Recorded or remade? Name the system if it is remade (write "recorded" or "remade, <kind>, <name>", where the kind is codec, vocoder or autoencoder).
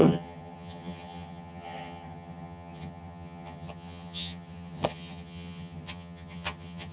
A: remade, vocoder, HiFi-GAN